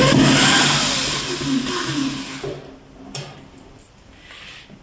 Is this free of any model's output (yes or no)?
yes